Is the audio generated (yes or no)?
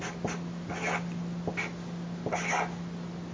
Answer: no